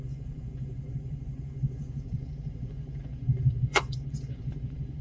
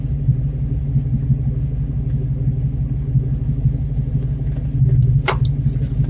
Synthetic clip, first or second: first